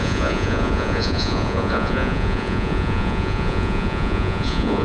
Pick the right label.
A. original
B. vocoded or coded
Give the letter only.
B